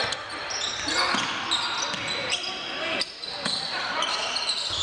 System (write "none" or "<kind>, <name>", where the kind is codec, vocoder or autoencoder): none